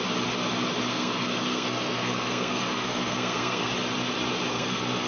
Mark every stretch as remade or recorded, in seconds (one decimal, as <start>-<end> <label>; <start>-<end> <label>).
0.0-0.9 recorded; 0.9-3.7 remade; 3.7-4.5 recorded; 4.5-5.1 remade